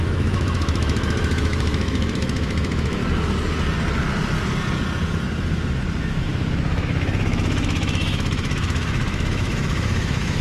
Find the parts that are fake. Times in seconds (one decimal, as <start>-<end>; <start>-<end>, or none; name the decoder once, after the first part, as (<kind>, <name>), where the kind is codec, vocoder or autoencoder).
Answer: 0.0-3.0 (autoencoder, DAC-VAE); 6.0-10.4